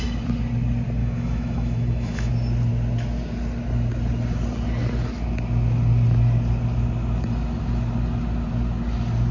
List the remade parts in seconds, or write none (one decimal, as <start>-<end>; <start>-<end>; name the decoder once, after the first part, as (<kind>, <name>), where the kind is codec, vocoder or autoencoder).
1.0-2.3 (autoencoder, DAC-VAE)